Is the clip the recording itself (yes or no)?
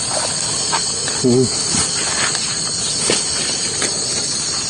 yes